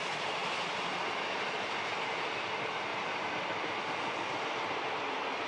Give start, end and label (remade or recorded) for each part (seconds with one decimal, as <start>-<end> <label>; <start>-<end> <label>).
0.0-5.5 recorded